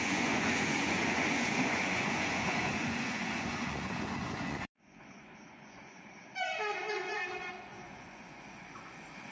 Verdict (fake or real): fake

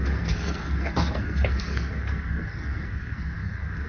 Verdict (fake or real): fake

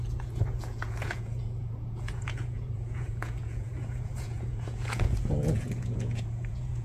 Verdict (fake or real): fake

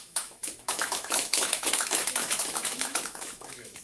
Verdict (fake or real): fake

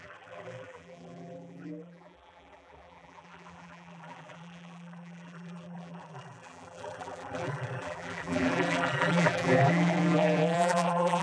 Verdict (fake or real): fake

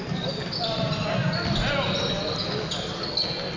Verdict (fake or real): real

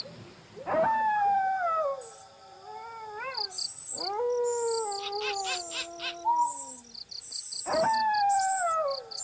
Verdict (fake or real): real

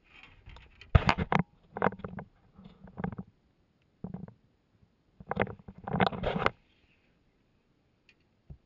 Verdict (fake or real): real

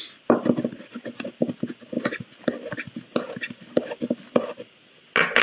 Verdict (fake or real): real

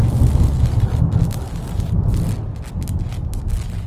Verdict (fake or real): real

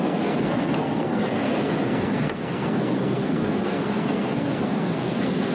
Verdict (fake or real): fake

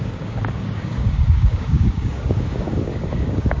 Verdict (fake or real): fake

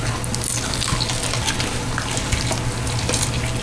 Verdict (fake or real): real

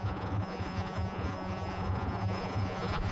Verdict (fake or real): fake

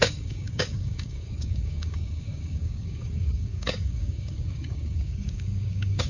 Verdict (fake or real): fake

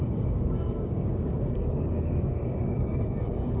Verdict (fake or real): fake